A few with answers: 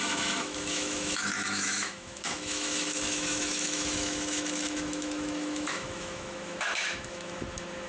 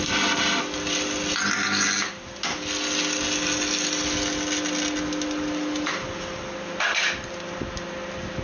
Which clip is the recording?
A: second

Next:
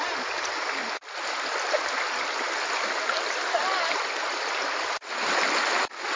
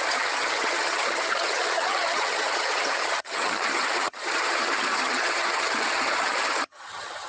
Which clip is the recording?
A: first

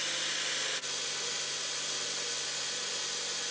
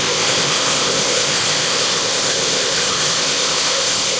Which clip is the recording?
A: first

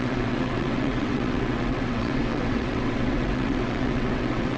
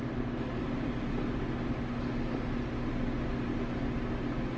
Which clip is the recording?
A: second